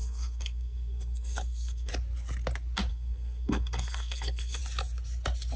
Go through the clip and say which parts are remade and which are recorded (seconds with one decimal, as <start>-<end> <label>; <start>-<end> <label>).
0.0-1.9 remade; 1.9-2.9 recorded; 2.9-4.6 remade; 4.6-5.6 recorded